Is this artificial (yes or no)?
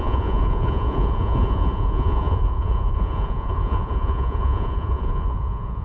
yes